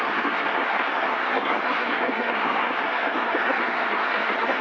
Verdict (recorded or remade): remade